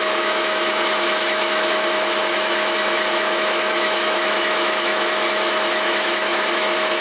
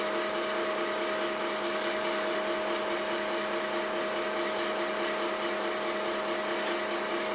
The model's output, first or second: first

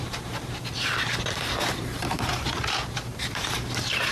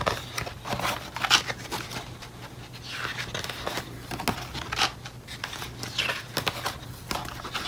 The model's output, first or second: first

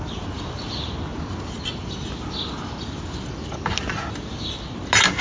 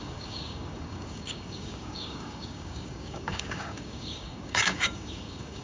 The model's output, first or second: second